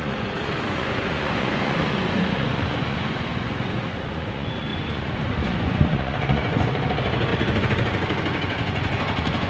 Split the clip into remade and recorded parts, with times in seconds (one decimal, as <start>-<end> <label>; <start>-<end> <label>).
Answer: 0.0-9.5 remade